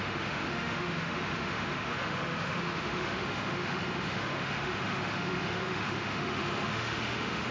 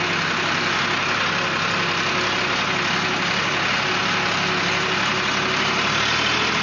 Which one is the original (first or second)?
second